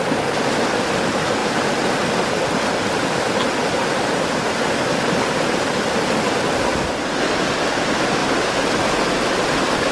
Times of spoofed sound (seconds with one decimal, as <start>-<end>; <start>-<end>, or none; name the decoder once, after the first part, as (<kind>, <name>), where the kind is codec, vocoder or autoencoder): none